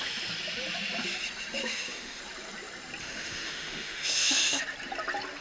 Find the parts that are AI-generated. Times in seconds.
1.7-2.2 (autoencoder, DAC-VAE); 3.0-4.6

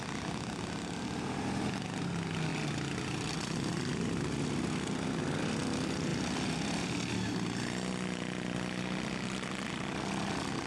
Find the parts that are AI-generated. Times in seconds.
none

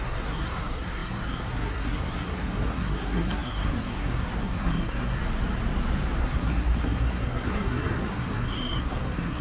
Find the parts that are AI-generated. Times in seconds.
0.0-5.2 (codec, SNAC); 6.2-9.4

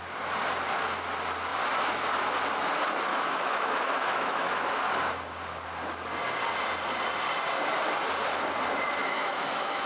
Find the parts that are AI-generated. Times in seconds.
3.1-4.5 (autoencoder, DAC-VAE); 9.0-9.9

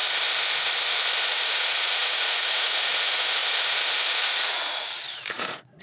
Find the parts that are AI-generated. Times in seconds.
1.3-5.8 (vocoder, Vocos)

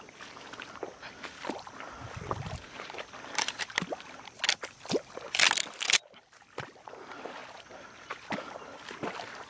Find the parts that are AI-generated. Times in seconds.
none

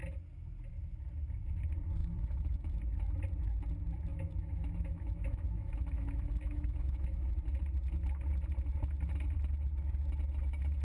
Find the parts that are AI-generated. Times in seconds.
2.0-2.8 (autoencoder, DAC-VAE); 4.1-7.3